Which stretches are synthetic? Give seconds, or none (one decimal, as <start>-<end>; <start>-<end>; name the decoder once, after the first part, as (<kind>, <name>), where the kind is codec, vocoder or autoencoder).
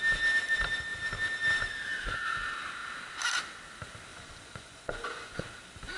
4.1-5.4 (vocoder, Vocos)